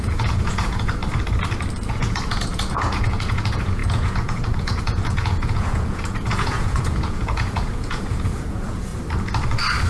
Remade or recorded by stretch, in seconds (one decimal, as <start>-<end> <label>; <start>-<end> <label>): 0.0-1.0 remade; 1.0-1.9 recorded; 1.9-8.9 remade; 8.9-9.9 recorded